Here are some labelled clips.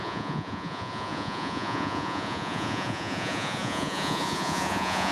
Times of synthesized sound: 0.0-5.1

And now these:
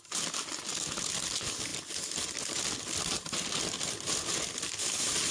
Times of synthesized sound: none